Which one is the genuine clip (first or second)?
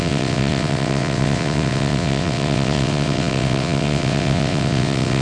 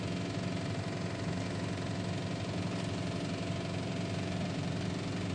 second